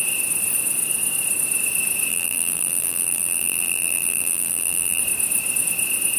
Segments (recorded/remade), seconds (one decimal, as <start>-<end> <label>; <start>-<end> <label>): 0.0-2.1 recorded; 2.1-5.0 remade; 5.0-6.2 recorded